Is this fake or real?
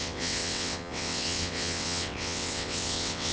fake